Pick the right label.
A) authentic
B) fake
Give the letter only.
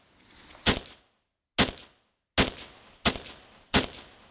A